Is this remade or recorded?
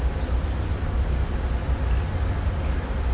recorded